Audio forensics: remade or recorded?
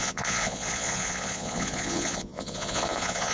remade